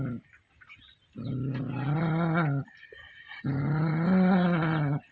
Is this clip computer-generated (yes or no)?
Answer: no